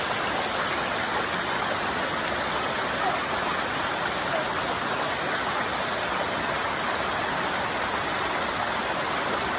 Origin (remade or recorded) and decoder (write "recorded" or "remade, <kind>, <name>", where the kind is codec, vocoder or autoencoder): recorded